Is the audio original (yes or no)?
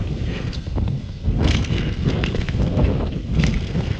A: no